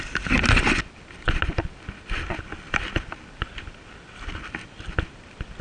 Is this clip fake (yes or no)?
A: no